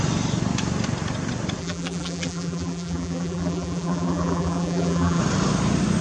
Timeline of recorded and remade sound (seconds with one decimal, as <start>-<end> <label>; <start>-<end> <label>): 0.0-1.6 recorded; 1.6-5.2 remade; 5.2-6.0 recorded